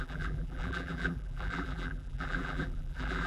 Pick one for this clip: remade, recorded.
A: remade